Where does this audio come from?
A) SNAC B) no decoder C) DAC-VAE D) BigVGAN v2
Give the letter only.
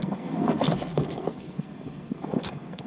A